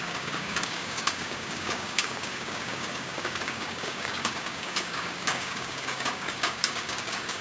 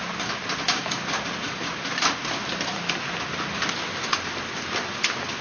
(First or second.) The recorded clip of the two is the second